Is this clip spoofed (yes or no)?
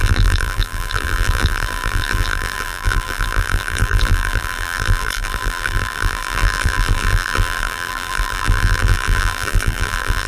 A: yes